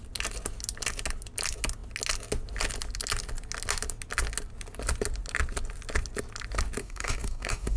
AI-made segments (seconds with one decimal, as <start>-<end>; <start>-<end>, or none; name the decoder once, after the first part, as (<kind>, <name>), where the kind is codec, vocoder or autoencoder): 6.8-7.8 (codec, DAC)